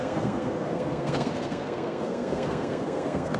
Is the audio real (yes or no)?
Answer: no